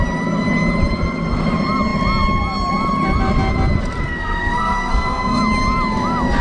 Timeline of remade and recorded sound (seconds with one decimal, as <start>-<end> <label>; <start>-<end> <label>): 0.0-4.0 recorded; 4.0-5.4 remade; 5.4-6.4 recorded